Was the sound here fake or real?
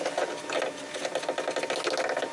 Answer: real